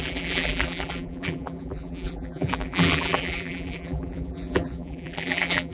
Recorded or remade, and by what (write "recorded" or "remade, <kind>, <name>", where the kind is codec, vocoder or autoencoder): remade, vocoder, BigVGAN v2